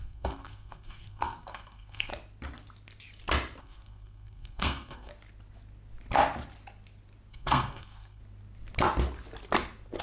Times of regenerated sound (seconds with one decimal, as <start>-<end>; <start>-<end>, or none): 0.0-2.1; 3.6-5.1; 7.3-8.2